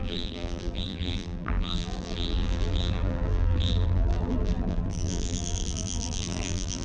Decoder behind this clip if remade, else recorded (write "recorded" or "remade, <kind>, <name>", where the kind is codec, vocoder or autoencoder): remade, vocoder, BigVGAN v2